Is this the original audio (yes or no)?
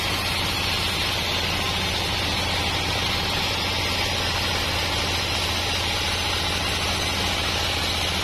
yes